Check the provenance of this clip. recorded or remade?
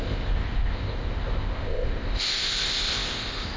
remade